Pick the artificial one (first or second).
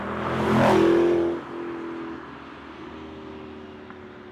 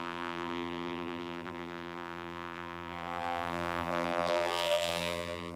second